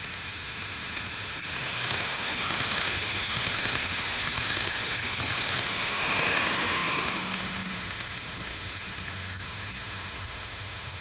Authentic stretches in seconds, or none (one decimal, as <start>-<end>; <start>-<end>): none

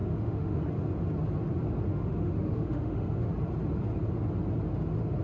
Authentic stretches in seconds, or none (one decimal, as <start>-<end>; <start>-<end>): 0.6-1.9; 3.3-5.2

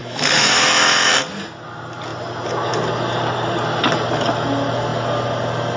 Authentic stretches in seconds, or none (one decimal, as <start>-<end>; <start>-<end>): 1.1-5.8

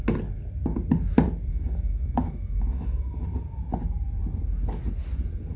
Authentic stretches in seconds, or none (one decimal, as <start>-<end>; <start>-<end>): 0.0-1.5; 3.2-5.6

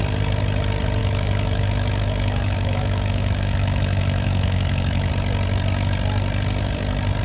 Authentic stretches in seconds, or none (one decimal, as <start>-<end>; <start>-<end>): 0.0-1.0; 5.1-7.2

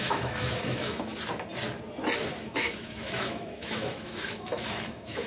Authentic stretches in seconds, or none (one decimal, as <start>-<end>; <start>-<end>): 1.1-2.4

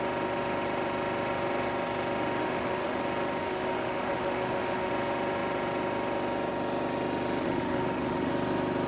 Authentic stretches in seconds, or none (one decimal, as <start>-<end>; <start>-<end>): 0.0-2.4; 3.0-3.4; 4.9-7.4; 8.3-8.9

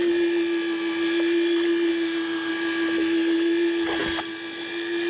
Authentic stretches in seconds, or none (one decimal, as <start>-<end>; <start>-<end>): 0.0-1.9; 2.5-5.1